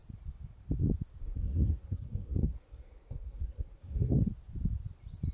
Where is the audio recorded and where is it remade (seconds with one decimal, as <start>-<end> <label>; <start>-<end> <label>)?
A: 0.0-1.2 recorded; 1.2-4.3 remade; 4.3-5.3 recorded